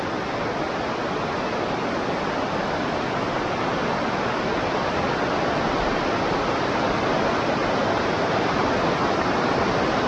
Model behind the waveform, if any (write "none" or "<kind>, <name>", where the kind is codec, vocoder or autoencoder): none